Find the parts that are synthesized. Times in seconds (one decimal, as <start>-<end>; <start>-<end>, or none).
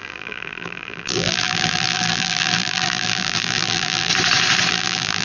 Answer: 0.0-4.1; 4.7-5.2